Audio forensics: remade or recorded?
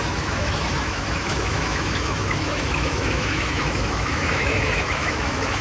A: remade